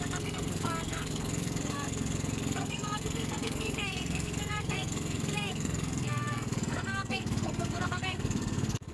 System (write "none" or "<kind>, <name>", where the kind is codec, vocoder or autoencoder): codec, SNAC